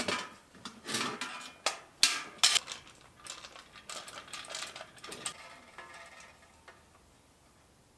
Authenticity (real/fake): real